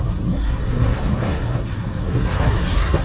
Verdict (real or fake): fake